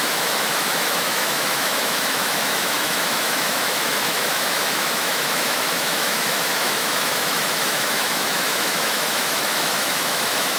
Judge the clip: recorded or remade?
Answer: remade